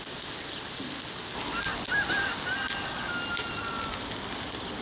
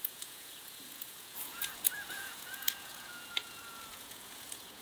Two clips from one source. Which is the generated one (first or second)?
second